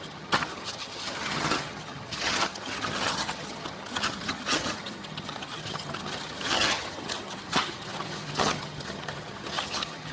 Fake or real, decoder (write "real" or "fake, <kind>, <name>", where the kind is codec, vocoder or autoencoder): fake, vocoder, HiFi-GAN